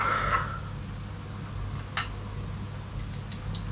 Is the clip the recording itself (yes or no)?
yes